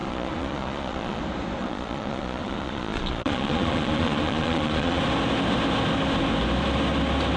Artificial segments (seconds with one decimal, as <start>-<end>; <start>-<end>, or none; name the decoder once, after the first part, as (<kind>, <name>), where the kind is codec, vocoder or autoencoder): 0.0-1.2 (vocoder, Vocos); 1.6-5.0